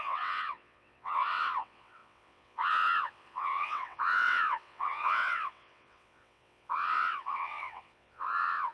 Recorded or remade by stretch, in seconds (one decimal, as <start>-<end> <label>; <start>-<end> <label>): 0.0-8.7 remade

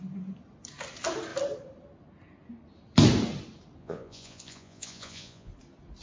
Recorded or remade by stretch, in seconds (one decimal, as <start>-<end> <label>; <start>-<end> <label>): 0.0-3.8 recorded; 3.8-5.5 remade; 5.5-6.0 recorded